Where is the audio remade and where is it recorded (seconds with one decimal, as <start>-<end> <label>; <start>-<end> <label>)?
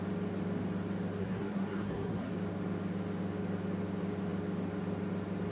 0.0-1.2 recorded; 1.2-2.3 remade; 2.3-5.5 recorded